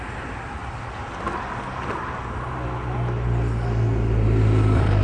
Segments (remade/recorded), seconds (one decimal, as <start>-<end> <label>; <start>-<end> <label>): 0.0-5.0 recorded